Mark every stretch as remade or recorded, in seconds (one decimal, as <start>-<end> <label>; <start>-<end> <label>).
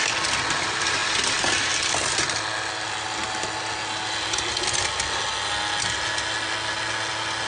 0.0-7.5 recorded